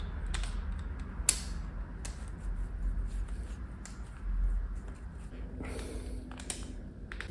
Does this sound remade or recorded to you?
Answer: recorded